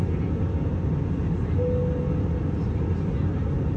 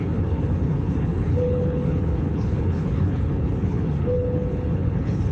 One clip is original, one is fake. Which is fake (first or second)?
second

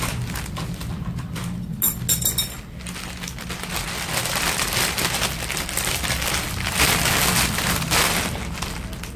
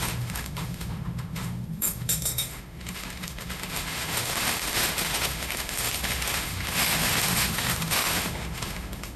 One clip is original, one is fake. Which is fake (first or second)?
second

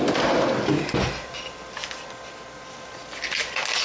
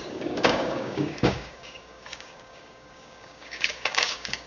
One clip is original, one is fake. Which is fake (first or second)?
second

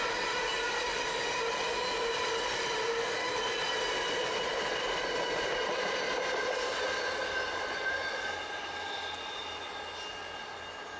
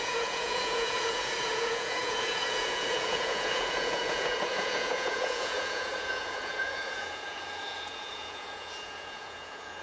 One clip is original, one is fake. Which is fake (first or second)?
second